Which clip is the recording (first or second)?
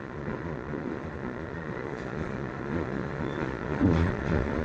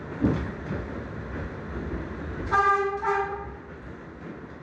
second